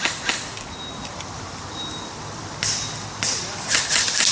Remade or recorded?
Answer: recorded